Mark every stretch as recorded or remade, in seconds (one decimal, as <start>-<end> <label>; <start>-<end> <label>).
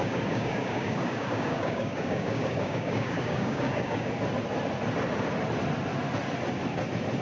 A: 0.0-4.1 remade; 4.1-7.2 recorded